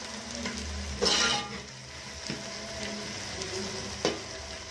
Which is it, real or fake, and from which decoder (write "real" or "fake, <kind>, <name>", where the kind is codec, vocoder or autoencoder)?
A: real